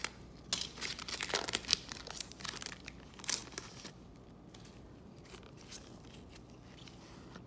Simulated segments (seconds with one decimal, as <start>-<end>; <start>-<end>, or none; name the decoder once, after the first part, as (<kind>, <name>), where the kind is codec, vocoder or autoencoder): 1.7-2.2 (vocoder, BigVGAN v2); 3.4-5.6